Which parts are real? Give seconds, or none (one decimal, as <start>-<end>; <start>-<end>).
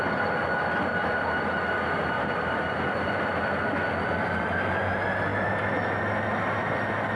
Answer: 0.0-0.9; 1.6-2.0; 4.7-7.2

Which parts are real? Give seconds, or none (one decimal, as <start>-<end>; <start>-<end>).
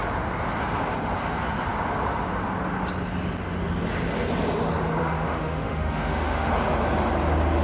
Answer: 0.0-5.0; 6.5-7.6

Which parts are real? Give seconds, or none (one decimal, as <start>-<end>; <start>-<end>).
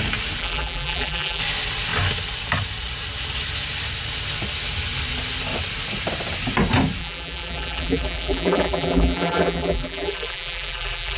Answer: 0.0-0.4; 1.4-7.0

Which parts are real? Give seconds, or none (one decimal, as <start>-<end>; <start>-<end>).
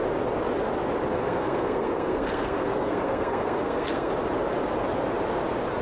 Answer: 0.0-1.1; 4.1-5.8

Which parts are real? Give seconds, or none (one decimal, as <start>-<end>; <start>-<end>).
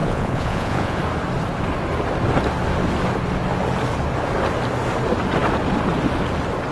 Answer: 1.0-6.7